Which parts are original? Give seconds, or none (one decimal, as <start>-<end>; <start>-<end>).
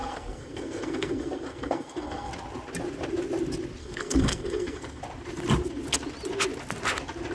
2.3-3.8; 5.0-7.3